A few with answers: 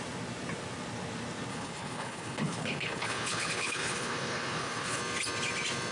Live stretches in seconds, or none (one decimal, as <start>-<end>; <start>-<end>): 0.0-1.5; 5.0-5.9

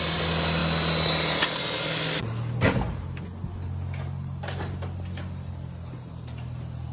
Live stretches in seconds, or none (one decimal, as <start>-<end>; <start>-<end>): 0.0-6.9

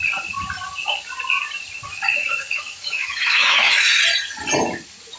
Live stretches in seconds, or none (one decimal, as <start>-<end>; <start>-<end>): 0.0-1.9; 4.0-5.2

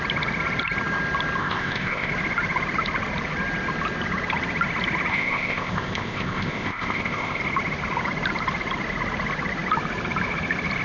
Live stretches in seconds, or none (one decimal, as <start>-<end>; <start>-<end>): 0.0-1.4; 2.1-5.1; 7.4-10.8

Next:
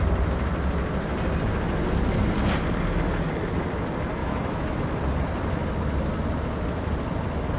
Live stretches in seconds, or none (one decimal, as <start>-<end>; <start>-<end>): 0.0-4.2; 4.7-7.6